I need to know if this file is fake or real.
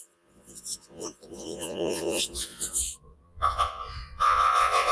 fake